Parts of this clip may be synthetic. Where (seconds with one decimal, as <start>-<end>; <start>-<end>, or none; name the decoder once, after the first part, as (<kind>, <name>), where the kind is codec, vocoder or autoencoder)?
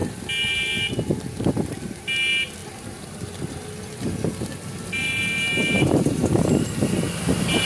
2.6-3.6 (vocoder, BigVGAN v2)